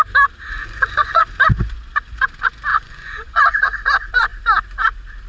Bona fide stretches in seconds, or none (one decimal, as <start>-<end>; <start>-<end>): 0.0-0.6; 1.2-2.7; 3.5-5.3